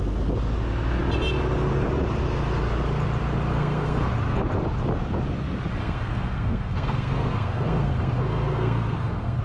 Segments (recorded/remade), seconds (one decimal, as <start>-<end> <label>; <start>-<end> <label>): 0.0-3.5 recorded; 3.5-4.1 remade; 4.1-5.8 recorded; 5.8-9.4 remade